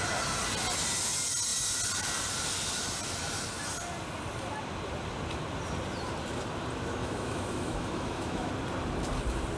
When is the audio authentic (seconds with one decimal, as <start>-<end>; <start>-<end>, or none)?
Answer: 0.0-7.0; 8.5-9.6